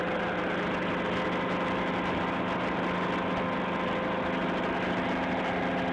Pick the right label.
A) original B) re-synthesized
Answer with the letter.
A